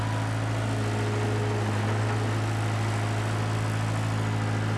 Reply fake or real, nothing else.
real